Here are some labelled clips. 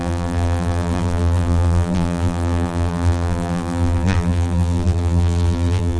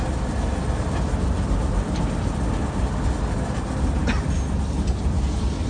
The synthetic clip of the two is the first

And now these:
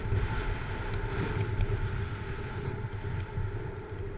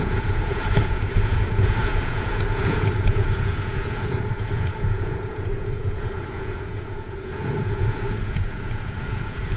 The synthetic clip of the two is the second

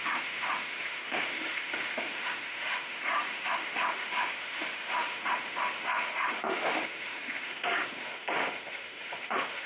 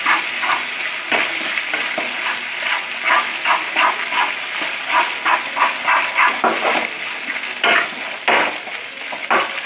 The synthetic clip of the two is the first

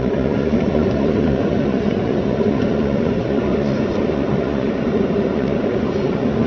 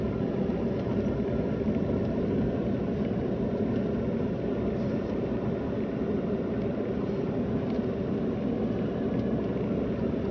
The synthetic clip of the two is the first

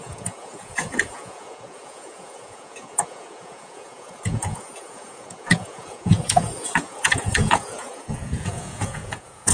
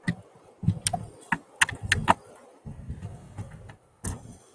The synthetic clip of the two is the first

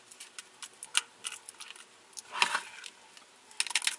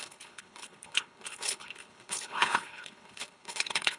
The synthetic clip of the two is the second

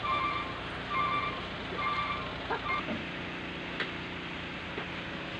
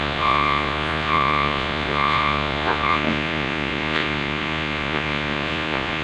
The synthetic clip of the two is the second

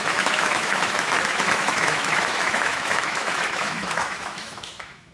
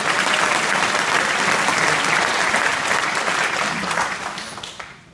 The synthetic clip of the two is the first